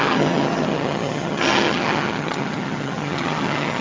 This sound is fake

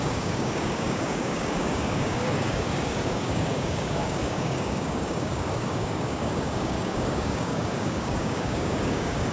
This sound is fake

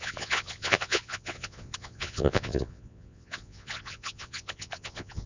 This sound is fake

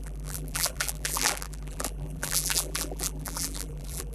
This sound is fake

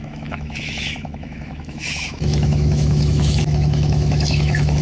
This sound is fake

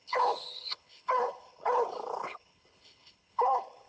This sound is fake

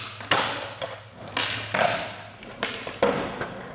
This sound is real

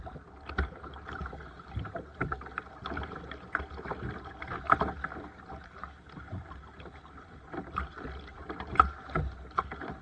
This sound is real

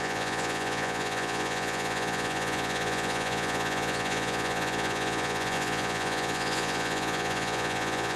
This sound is fake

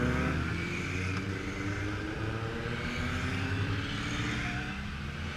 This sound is real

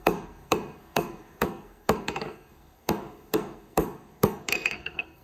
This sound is fake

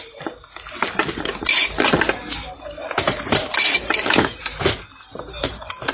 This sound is real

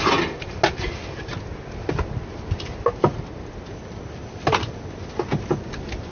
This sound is real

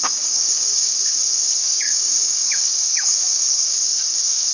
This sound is fake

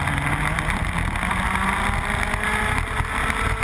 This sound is real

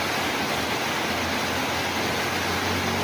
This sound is real